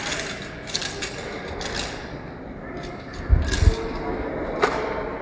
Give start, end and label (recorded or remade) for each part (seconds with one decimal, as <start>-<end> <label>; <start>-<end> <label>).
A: 0.0-5.2 recorded